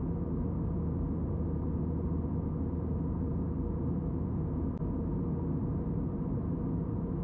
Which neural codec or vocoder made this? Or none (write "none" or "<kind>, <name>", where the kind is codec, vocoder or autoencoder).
none